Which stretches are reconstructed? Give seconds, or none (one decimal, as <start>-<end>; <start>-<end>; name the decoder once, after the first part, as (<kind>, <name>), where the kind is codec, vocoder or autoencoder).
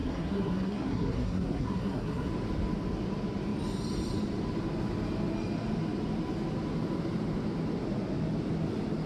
0.0-2.3 (codec, SNAC)